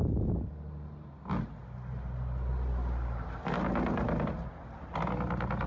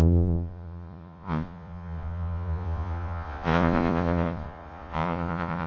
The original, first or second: first